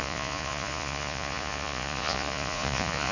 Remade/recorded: remade